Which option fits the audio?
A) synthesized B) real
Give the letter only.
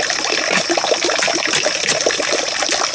B